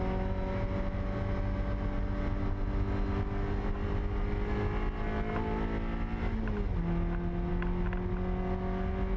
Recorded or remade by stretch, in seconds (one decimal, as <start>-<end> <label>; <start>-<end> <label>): 0.0-9.2 recorded